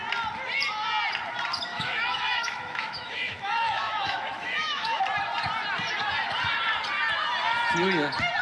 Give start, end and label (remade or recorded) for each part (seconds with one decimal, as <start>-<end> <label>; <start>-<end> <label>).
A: 0.0-1.7 recorded; 1.7-5.0 remade; 5.0-8.4 recorded

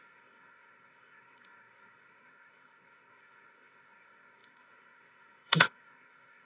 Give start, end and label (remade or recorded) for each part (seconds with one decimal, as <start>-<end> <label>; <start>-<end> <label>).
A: 0.0-6.5 remade

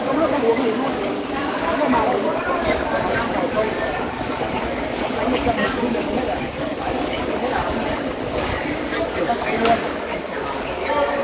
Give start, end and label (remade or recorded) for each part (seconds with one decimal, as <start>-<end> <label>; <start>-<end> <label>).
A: 0.0-7.6 remade; 7.6-8.3 recorded; 8.3-11.2 remade

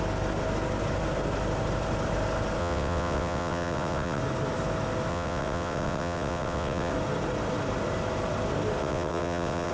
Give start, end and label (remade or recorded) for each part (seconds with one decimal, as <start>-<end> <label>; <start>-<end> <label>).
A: 0.0-2.6 recorded; 2.6-4.2 remade; 4.2-5.1 recorded; 5.1-6.9 remade; 6.9-8.8 recorded; 8.8-9.7 remade

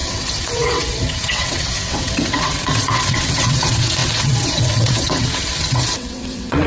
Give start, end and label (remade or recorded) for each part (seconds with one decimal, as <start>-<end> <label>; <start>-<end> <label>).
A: 0.0-6.7 remade

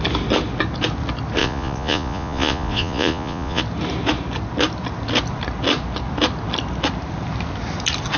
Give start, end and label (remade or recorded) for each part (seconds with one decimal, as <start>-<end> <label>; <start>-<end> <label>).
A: 0.0-1.4 recorded; 1.4-3.6 remade; 3.6-8.2 recorded

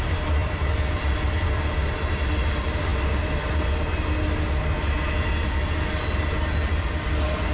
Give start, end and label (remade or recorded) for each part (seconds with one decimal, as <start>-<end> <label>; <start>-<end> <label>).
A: 0.0-0.4 recorded; 0.4-1.0 remade; 1.0-7.5 recorded